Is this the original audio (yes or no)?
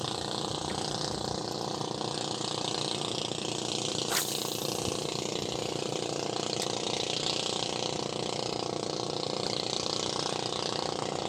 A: yes